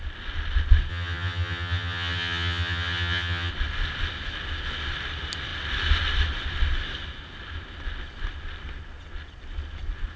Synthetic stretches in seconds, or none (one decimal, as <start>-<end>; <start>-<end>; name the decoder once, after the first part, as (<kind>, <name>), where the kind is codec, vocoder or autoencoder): 0.9-3.5 (vocoder, HiFi-GAN)